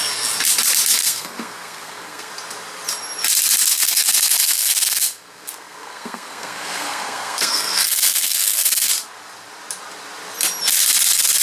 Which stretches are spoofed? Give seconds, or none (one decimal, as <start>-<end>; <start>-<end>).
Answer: 1.0-2.3; 3.7-8.9